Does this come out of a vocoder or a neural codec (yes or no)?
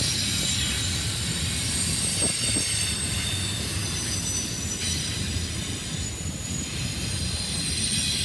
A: no